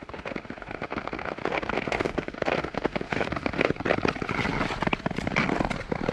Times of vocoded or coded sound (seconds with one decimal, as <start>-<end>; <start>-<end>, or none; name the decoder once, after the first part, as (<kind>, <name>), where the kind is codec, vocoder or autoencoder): 0.0-3.7 (autoencoder, DAC-VAE)